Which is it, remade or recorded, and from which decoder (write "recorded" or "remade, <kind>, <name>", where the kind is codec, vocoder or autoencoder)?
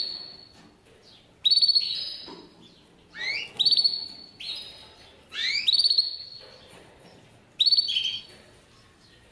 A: recorded